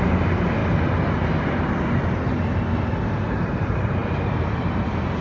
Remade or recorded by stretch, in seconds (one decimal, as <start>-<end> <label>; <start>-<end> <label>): 0.0-0.6 remade; 0.6-3.3 recorded; 3.3-5.2 remade